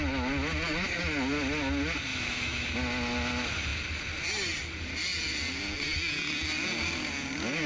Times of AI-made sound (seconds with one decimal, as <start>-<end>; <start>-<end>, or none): 2.1-2.7